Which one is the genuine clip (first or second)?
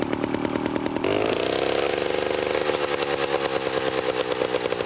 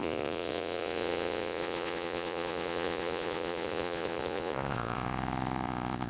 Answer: first